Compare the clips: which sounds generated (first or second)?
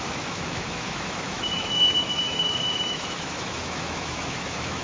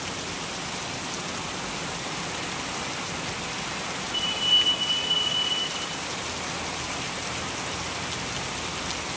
first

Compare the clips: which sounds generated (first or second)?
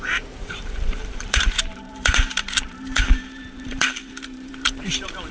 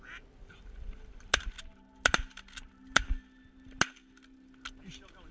first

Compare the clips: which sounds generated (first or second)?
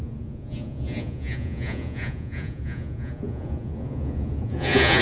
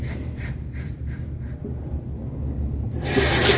first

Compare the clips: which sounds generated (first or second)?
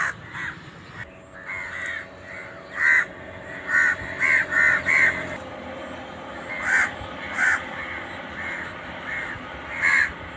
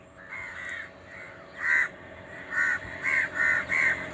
second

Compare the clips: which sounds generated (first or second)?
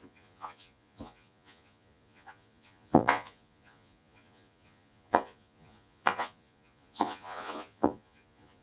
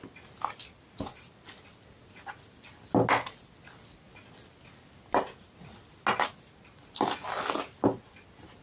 first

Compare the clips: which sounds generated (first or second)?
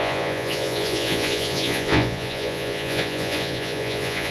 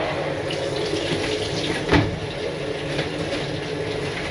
first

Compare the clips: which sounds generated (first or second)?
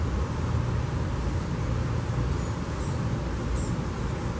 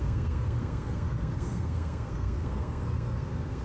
second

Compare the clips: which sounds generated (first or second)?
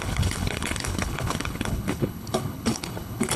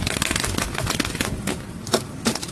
first